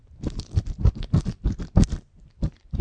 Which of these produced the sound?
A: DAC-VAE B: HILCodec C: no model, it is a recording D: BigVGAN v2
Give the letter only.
C